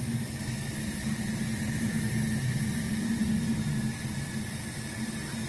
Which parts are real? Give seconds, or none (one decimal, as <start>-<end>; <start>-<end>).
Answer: 0.0-5.5